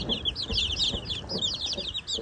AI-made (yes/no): no